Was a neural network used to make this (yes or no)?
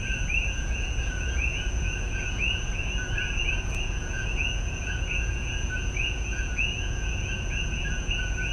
yes